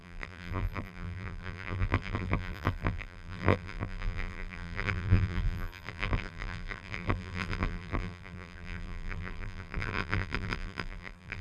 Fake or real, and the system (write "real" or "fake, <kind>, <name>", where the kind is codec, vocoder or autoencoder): fake, vocoder, BigVGAN v2